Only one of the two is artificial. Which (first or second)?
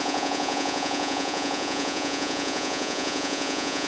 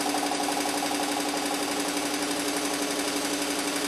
first